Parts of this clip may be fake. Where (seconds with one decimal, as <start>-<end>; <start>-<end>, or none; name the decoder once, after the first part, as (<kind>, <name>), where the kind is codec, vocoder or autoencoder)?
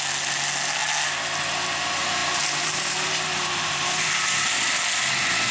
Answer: 2.2-4.3 (vocoder, BigVGAN v2)